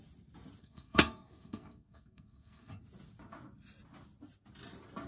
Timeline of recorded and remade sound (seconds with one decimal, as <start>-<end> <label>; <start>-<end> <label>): 0.0-0.6 recorded; 0.6-2.8 remade; 2.8-5.1 recorded